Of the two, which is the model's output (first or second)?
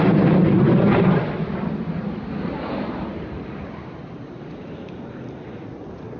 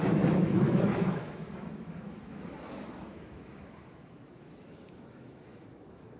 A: second